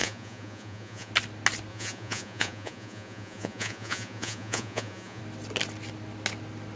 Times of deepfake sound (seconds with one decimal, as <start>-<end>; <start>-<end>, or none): 0.0-1.1; 1.7-5.2